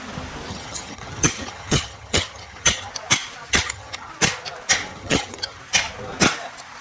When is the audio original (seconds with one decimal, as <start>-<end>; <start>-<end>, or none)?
0.0-0.5; 2.9-3.5; 4.1-4.9; 5.6-6.8

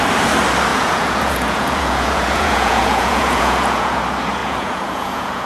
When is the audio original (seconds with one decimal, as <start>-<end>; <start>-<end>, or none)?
0.0-0.7; 4.0-4.4

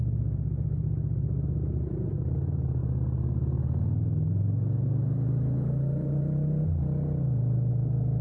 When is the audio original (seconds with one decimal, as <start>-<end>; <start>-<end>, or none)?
0.0-8.2